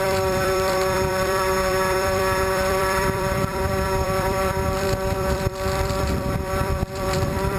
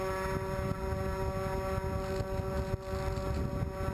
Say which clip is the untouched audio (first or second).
second